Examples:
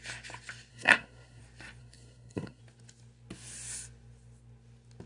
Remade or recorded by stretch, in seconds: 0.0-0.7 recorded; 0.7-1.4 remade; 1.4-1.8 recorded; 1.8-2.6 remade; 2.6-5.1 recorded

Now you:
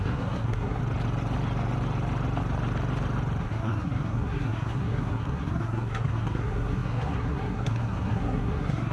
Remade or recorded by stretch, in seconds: 0.0-0.8 remade; 0.8-3.4 recorded; 3.4-8.9 remade